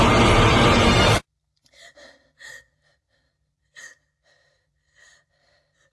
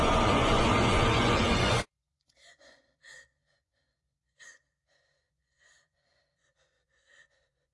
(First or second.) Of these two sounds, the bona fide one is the first